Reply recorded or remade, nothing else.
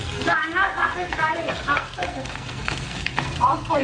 remade